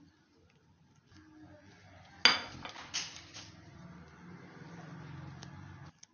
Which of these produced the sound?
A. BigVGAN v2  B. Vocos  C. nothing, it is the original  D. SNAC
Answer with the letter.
C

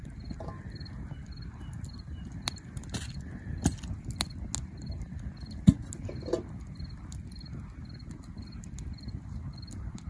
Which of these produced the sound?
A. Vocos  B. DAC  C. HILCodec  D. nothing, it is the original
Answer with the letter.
D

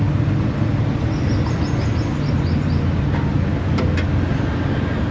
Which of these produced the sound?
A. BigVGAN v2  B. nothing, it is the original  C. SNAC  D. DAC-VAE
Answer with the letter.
B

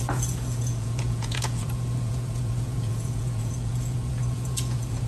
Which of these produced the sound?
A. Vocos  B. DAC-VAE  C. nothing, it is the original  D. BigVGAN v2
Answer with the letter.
A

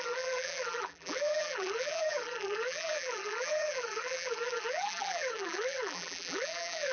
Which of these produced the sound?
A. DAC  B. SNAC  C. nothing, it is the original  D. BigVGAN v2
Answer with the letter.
D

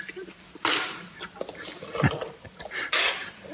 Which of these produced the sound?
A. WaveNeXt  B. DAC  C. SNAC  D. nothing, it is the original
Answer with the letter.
D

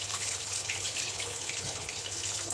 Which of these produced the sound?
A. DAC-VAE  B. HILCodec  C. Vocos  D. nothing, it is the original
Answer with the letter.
B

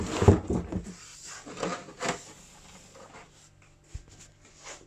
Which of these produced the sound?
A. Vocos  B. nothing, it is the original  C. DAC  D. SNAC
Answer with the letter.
B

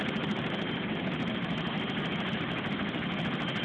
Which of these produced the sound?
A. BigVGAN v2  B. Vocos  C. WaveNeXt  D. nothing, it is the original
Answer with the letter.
D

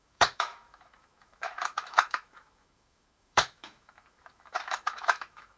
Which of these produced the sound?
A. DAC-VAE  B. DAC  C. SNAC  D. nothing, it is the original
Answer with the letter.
A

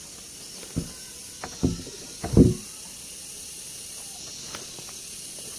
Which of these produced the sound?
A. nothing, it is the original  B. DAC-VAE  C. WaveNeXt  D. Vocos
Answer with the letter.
A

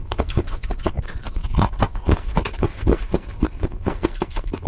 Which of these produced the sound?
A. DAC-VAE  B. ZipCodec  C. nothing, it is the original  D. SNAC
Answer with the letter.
D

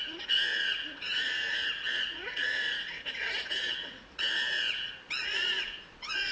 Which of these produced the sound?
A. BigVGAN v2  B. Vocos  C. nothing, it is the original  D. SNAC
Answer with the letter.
B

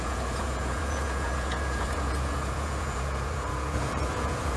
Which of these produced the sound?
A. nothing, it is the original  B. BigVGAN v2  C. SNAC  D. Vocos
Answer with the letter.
D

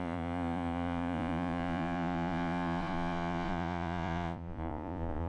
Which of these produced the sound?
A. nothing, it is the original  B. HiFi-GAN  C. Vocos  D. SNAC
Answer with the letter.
C